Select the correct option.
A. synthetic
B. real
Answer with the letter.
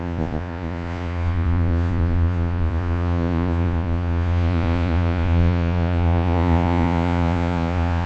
A